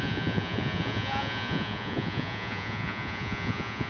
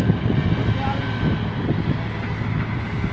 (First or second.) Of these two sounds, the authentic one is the second